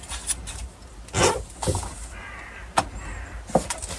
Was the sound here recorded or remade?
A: recorded